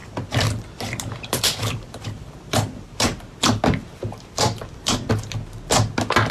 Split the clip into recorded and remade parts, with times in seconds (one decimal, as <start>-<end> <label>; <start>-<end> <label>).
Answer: 0.0-3.2 remade; 3.2-3.8 recorded; 3.8-5.1 remade; 5.1-6.3 recorded